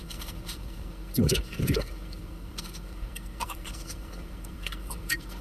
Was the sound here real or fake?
fake